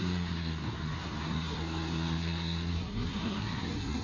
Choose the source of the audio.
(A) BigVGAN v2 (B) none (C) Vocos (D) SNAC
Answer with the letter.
D